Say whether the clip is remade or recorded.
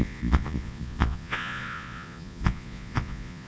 remade